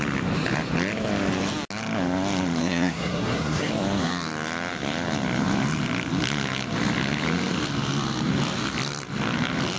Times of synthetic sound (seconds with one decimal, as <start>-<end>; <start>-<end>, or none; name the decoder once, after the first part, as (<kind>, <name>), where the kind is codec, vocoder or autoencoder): 2.6-3.7 (codec, SNAC)